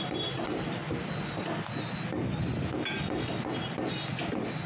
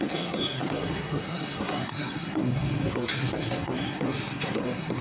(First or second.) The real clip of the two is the first